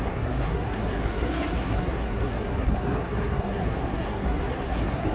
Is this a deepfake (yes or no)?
yes